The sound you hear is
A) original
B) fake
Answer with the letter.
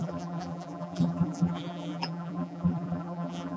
B